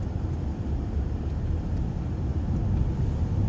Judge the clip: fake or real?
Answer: real